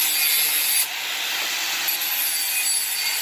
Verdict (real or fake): real